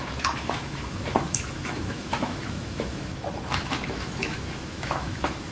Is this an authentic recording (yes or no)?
no